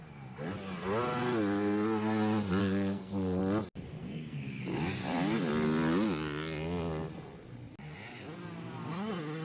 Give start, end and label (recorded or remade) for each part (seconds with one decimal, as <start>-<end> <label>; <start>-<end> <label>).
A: 0.0-2.6 recorded; 2.6-3.4 remade; 3.4-4.0 recorded; 4.0-4.6 remade; 4.6-9.4 recorded